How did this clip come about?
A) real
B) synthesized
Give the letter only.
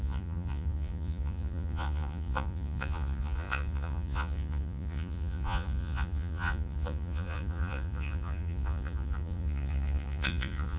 B